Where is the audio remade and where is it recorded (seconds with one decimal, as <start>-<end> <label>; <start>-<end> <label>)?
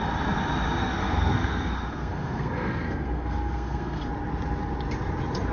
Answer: 0.0-0.8 recorded; 0.8-4.1 remade; 4.1-5.5 recorded